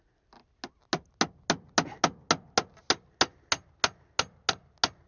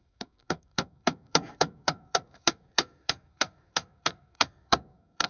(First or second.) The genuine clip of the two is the first